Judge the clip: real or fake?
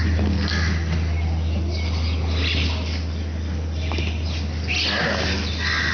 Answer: real